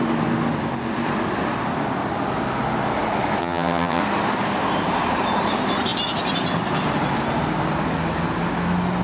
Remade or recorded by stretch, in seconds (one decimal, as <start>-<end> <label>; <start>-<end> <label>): 0.0-3.4 recorded; 3.4-4.0 remade; 4.0-9.0 recorded

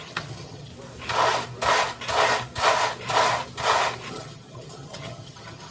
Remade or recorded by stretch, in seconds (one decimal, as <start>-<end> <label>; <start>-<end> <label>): 0.0-0.7 remade; 0.7-4.1 recorded; 4.1-5.7 remade